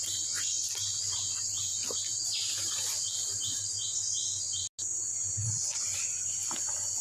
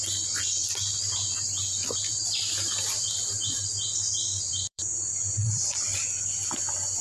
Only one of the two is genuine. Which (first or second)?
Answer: first